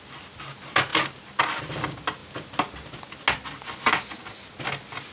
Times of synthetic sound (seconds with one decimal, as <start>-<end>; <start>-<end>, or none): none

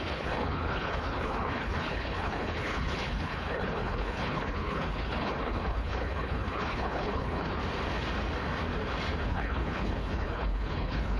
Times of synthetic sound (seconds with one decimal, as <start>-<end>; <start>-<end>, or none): 0.0-7.6; 9.3-11.2

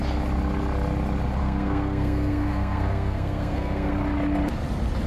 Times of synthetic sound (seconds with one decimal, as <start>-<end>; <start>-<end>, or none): 1.4-3.9